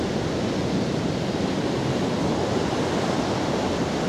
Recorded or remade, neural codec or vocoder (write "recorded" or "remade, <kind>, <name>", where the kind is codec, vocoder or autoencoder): recorded